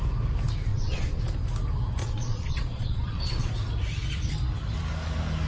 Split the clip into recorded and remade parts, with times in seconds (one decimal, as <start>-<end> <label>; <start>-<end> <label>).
0.0-0.7 recorded; 0.7-1.2 remade; 1.2-2.0 recorded; 2.0-3.5 remade; 3.5-5.5 recorded